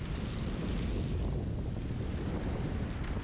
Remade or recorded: recorded